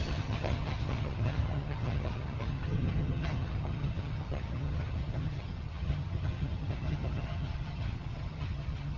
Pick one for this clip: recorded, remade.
remade